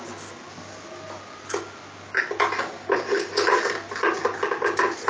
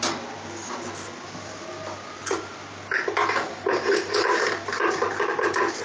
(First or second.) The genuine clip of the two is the first